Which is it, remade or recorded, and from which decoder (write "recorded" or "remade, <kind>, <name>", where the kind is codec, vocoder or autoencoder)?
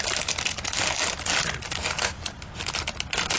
recorded